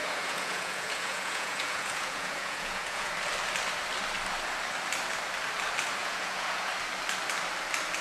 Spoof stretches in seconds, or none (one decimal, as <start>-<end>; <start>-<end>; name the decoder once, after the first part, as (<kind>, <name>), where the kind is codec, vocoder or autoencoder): 0.0-3.1 (vocoder, Vocos); 6.0-6.7